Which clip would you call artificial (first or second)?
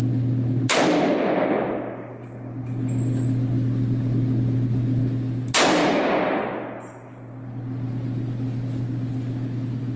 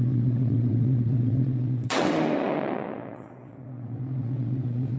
second